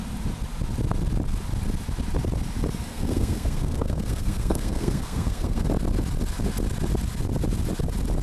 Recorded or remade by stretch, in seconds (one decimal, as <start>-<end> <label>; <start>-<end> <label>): 0.0-2.9 recorded; 2.9-5.7 remade; 5.7-8.2 recorded